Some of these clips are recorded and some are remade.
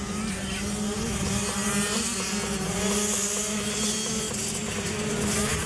recorded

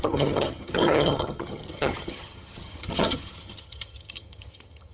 remade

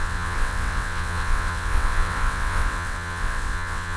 remade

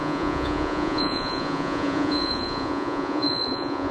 remade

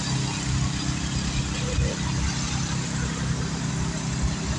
recorded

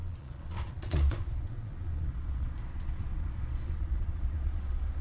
remade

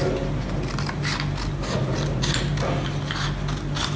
recorded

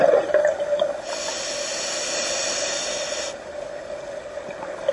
recorded